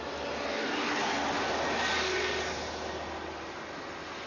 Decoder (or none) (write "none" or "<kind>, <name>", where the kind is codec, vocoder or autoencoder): none